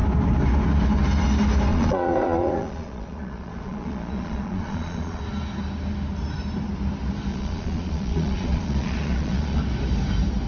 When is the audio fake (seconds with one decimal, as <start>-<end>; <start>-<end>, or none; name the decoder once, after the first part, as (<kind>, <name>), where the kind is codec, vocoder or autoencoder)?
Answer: 1.7-5.2 (vocoder, Vocos); 7.3-9.6